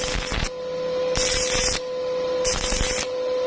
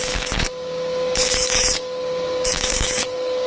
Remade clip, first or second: second